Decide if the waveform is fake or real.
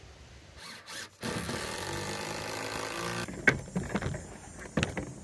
real